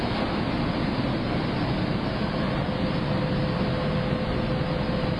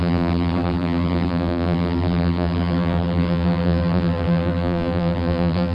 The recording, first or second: first